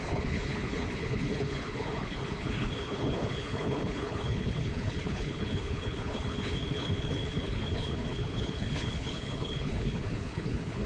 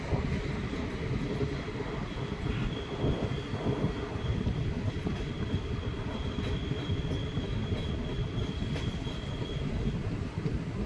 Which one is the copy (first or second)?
first